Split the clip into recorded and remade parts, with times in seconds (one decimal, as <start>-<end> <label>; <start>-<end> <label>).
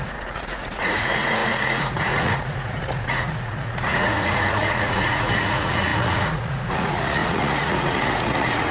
0.0-8.7 remade